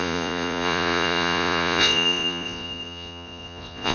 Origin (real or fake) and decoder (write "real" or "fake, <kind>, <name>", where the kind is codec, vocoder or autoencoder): fake, vocoder, Vocos